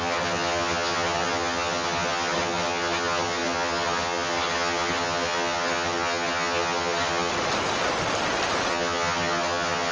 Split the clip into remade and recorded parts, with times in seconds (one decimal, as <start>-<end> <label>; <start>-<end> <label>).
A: 0.0-7.3 remade; 7.3-8.7 recorded; 8.7-9.9 remade